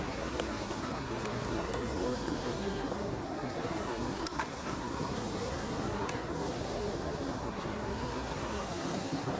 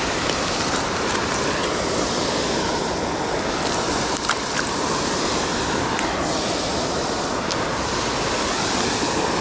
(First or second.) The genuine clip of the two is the second